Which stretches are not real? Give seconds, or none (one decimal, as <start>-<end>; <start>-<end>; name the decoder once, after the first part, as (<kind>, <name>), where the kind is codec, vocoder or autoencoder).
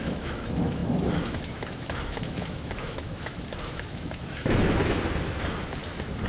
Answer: 0.0-4.8 (autoencoder, DAC-VAE)